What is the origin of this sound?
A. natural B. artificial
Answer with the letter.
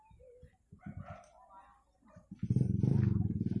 A